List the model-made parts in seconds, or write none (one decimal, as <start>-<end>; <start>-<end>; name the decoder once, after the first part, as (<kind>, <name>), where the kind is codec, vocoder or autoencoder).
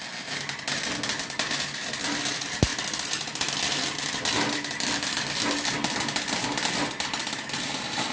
none